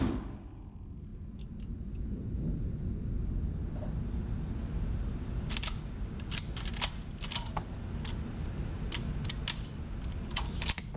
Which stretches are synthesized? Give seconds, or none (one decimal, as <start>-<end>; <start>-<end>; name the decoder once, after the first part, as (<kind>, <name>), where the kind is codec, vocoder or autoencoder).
none